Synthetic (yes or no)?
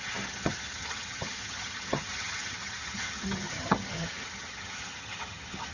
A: yes